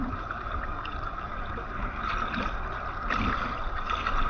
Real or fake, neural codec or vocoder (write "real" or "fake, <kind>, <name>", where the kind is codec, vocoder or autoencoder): real